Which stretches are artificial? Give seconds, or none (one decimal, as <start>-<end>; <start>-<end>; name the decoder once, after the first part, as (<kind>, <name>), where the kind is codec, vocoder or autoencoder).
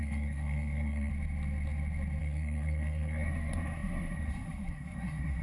0.0-1.1 (codec, SNAC); 2.2-5.4